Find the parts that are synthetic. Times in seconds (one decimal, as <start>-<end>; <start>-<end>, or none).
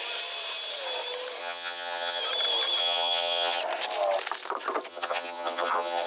1.4-2.2; 2.8-3.6; 4.9-6.1